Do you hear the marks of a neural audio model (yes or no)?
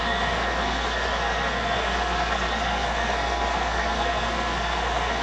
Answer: yes